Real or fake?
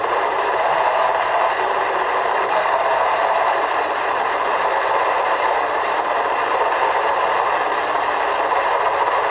fake